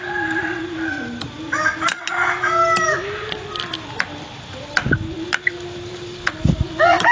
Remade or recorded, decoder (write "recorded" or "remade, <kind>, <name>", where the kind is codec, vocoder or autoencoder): recorded